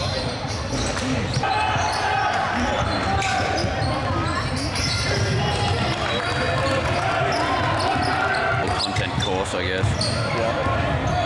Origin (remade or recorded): recorded